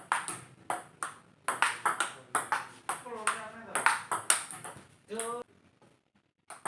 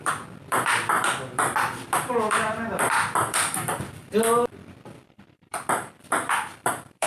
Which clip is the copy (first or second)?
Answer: second